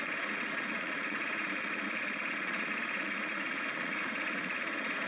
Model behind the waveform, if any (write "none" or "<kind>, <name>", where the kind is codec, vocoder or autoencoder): vocoder, Vocos